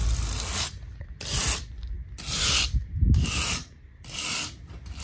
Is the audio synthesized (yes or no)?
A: no